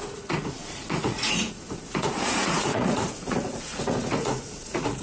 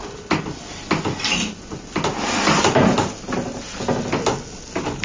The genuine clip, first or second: second